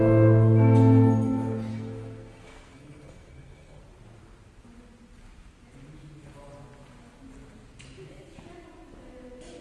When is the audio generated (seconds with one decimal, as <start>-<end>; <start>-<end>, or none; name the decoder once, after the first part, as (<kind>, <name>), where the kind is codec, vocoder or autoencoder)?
1.7-3.8 (codec, SNAC)